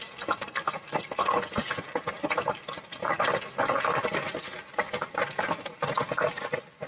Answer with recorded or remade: recorded